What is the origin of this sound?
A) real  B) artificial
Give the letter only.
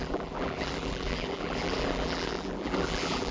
B